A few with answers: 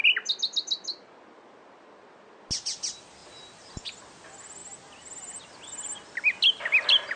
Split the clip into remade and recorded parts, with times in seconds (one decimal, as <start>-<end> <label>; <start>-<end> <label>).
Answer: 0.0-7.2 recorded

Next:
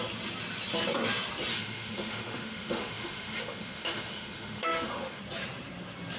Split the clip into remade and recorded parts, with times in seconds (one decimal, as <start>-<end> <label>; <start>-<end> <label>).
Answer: 0.0-1.5 recorded; 1.5-5.2 remade; 5.2-6.2 recorded

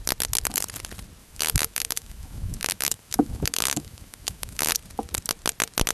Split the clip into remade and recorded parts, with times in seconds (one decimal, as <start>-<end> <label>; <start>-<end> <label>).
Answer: 0.0-1.2 recorded; 1.2-4.7 remade; 4.7-5.9 recorded

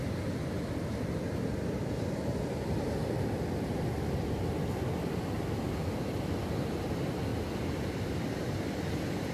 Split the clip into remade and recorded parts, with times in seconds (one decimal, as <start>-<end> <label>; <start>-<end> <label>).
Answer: 0.0-9.3 recorded

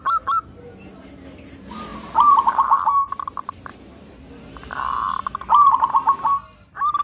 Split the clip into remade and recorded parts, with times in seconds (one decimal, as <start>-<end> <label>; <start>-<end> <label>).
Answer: 0.0-7.0 recorded

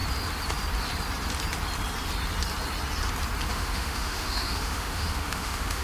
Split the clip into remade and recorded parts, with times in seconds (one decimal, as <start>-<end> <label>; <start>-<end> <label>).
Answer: 0.0-3.5 recorded; 3.5-5.8 remade

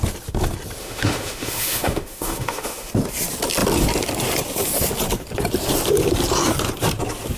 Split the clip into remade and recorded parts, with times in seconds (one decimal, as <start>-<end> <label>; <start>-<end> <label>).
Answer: 0.0-0.8 recorded; 0.8-2.9 remade; 2.9-7.4 recorded

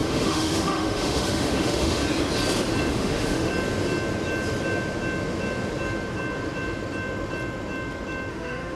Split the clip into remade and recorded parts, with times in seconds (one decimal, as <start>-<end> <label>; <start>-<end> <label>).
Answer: 0.0-2.0 remade; 2.0-2.9 recorded; 2.9-3.5 remade; 3.5-8.3 recorded; 8.3-8.8 remade